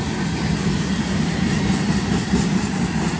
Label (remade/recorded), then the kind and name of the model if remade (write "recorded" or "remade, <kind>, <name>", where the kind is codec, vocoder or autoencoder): recorded